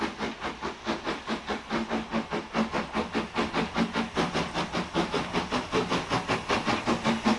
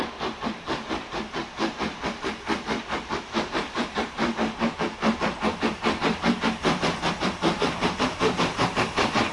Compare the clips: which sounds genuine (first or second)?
first